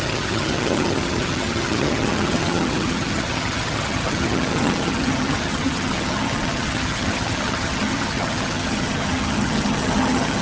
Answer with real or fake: fake